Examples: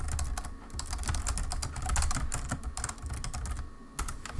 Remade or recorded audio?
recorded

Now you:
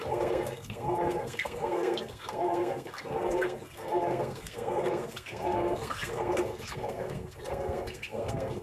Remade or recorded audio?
remade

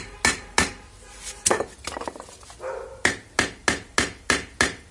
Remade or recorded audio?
recorded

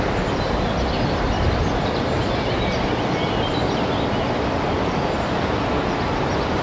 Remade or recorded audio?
recorded